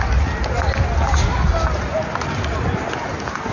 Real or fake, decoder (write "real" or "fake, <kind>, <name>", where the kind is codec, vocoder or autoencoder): real